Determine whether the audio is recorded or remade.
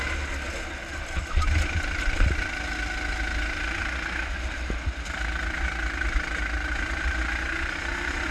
recorded